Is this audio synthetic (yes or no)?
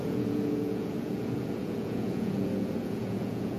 yes